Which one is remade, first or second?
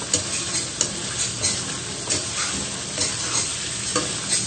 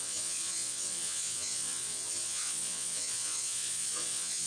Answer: second